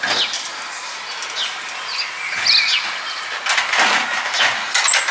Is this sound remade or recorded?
recorded